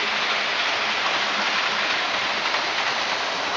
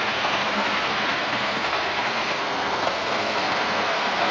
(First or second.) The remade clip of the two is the second